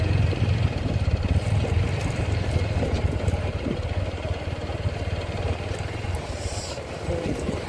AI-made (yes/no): yes